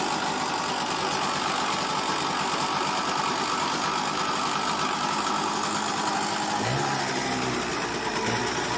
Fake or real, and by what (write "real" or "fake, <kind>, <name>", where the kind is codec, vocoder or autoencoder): real